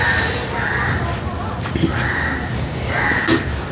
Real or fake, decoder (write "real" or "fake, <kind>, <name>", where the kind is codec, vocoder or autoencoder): real